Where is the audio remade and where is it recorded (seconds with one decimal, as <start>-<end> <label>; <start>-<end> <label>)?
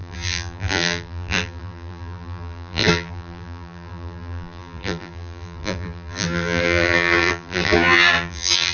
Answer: 0.0-8.7 remade